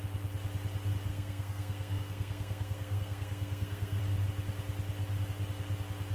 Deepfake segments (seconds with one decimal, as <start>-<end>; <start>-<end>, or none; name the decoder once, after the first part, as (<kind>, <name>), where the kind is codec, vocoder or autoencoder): 1.1-4.0 (codec, SNAC)